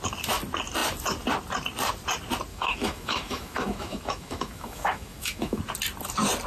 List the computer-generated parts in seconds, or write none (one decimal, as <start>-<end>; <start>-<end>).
2.5-5.6